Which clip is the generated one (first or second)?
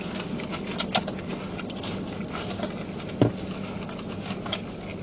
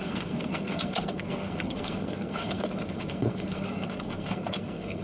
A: second